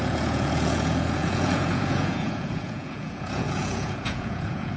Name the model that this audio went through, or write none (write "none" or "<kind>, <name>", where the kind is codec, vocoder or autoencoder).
vocoder, Vocos